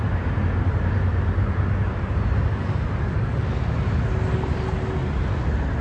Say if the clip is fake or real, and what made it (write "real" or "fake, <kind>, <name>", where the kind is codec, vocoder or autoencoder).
real